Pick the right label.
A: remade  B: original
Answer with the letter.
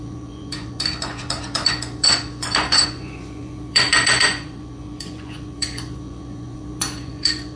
A